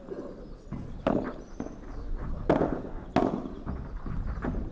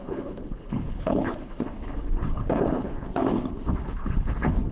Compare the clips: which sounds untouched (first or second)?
first